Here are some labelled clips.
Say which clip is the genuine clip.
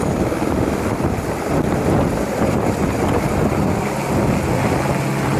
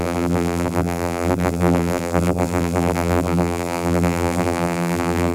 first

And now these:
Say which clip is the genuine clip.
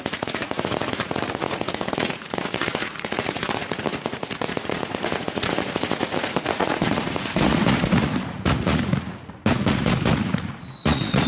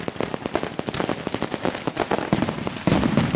second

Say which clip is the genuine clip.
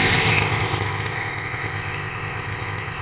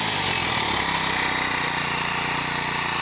second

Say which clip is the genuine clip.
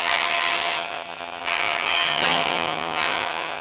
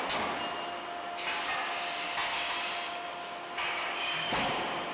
second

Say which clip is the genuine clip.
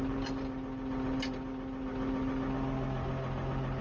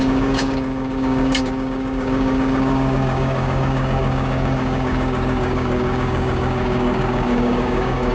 first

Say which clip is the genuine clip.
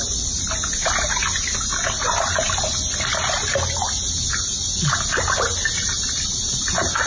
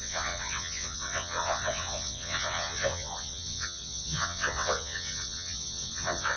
first